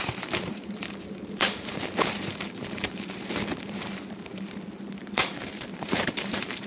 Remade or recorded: remade